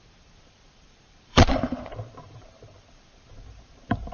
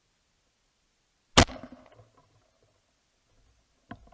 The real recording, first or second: second